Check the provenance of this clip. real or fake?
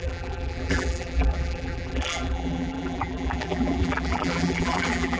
fake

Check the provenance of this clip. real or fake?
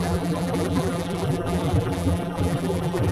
fake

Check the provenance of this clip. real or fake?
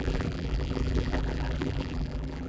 fake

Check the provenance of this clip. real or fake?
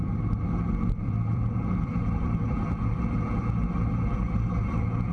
fake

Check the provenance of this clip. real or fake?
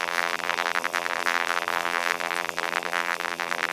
fake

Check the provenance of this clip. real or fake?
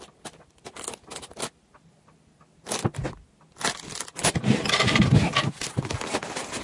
real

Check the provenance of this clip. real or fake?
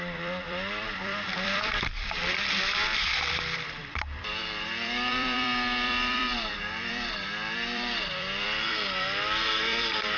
fake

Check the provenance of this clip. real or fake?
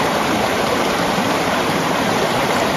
fake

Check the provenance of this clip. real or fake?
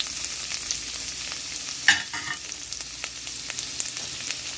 real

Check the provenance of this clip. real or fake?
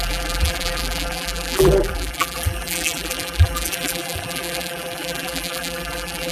fake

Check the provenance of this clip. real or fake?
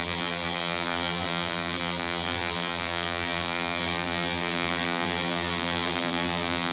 fake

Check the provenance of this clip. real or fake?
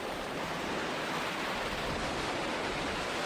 real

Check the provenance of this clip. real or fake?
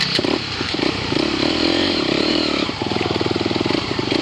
fake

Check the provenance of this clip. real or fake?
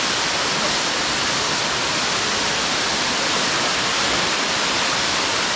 real